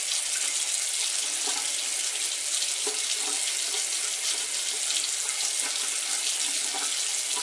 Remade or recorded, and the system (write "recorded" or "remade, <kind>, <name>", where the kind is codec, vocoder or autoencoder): recorded